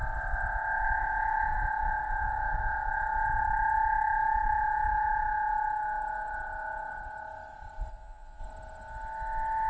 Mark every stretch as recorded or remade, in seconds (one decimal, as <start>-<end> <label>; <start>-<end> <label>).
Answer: 0.0-7.9 recorded; 7.9-8.4 remade; 8.4-9.7 recorded